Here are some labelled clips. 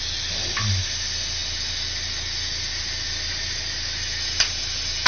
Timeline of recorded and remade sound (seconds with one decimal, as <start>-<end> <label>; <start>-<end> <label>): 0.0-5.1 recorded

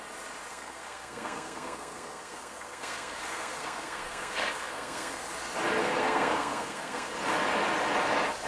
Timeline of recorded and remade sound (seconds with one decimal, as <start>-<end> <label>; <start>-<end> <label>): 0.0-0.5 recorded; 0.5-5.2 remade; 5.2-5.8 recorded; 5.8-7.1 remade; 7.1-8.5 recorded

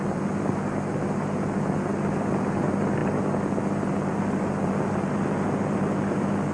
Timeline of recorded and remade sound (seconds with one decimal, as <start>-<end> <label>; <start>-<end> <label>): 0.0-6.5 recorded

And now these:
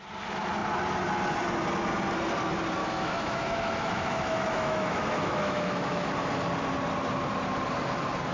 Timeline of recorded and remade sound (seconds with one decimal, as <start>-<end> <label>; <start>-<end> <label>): 0.0-2.8 recorded; 2.8-6.1 remade; 6.1-8.3 recorded

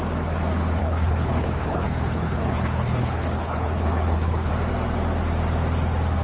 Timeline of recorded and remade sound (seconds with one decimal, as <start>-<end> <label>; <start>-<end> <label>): 0.0-0.8 recorded; 0.8-4.5 remade; 4.5-6.2 recorded